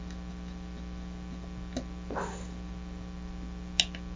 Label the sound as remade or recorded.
recorded